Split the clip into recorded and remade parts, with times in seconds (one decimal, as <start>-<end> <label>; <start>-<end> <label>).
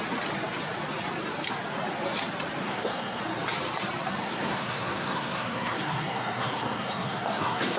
0.0-2.6 recorded; 2.6-3.2 remade; 3.2-4.2 recorded; 4.2-7.8 remade